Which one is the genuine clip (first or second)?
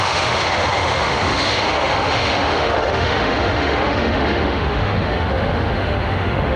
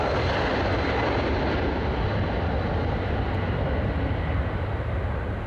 second